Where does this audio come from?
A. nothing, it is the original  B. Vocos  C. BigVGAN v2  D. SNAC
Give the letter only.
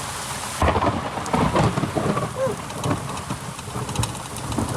A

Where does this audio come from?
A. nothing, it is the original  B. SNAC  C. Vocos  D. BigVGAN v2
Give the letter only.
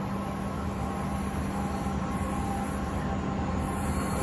A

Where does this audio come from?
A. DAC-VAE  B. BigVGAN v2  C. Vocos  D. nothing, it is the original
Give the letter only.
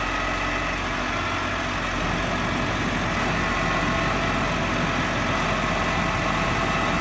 D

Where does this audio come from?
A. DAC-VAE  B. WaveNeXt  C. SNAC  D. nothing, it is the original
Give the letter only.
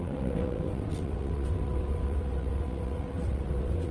B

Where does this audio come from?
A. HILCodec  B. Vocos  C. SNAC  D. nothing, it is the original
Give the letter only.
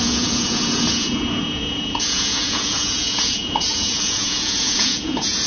B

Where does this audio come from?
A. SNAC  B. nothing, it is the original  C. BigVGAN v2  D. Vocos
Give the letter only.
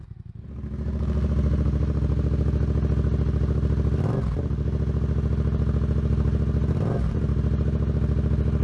B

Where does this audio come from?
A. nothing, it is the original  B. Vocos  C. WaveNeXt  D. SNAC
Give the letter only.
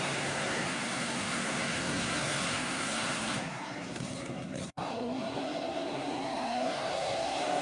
D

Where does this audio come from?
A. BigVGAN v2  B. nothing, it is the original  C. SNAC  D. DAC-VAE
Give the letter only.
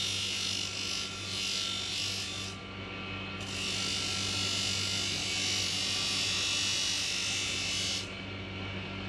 B